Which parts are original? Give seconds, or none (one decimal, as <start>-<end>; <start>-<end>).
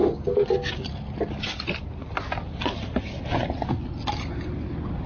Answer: 0.0-5.1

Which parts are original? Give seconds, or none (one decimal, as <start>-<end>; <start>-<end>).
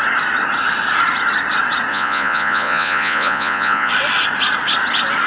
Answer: 0.0-1.9; 3.9-5.3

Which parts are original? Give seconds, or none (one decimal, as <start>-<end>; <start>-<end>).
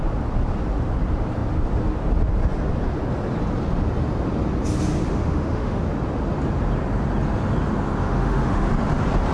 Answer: 0.0-5.1; 5.8-8.0; 8.7-9.3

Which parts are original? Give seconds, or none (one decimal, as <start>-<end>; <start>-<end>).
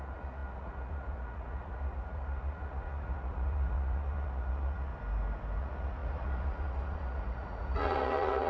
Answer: 4.9-5.6